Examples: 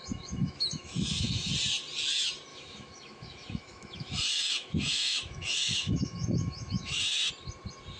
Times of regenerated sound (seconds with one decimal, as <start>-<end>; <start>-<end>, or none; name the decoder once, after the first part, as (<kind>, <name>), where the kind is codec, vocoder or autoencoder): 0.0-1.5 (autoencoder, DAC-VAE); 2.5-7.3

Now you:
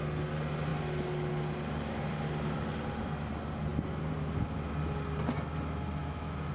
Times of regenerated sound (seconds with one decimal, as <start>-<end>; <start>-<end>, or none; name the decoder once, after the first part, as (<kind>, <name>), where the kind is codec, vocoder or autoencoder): 6.0-6.5 (autoencoder, DAC-VAE)

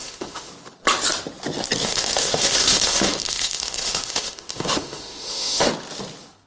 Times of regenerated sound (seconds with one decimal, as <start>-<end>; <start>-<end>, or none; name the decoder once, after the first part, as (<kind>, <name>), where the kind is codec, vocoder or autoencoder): 0.0-0.5 (autoencoder, DAC-VAE); 1.8-5.7